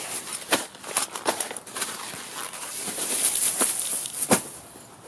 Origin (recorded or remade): recorded